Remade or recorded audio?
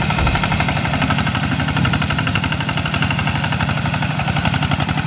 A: remade